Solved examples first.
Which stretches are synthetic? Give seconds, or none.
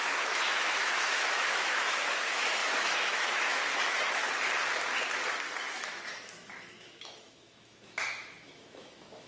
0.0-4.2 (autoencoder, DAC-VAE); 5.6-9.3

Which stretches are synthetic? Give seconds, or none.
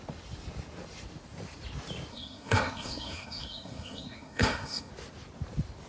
2.1-4.9 (codec, SNAC)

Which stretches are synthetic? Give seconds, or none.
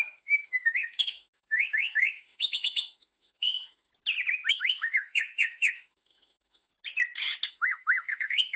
0.0-3.9 (autoencoder, DAC-VAE); 4.5-6.7; 7.5-8.6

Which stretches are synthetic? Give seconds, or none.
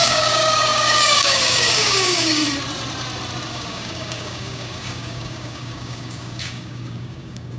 0.0-2.4 (codec, DAC); 3.5-7.6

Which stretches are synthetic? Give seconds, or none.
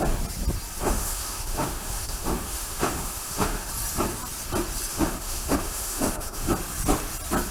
0.8-3.7 (autoencoder, DAC-VAE); 4.9-6.5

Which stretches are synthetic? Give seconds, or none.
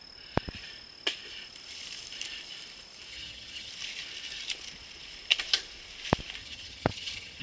3.1-3.7 (vocoder, HiFi-GAN); 6.4-7.4